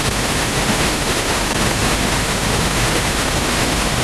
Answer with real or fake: fake